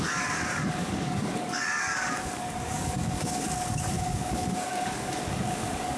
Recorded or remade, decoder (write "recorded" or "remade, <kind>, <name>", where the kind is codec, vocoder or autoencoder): remade, codec, DAC